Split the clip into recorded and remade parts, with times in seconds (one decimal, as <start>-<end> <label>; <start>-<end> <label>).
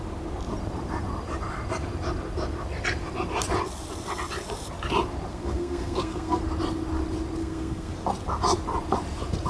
0.0-5.3 recorded; 5.3-6.4 remade; 6.4-7.4 recorded; 7.4-7.9 remade; 7.9-9.5 recorded